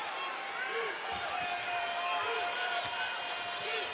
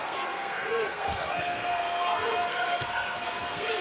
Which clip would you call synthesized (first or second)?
second